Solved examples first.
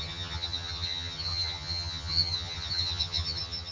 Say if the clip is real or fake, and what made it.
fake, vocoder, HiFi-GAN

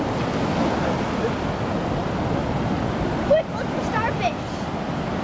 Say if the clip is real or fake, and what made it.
real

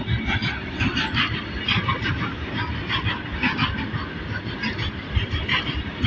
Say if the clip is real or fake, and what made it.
real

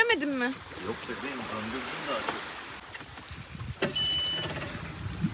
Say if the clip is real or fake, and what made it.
real